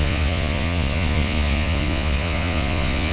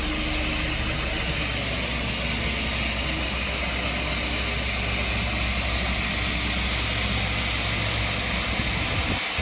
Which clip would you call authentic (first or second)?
second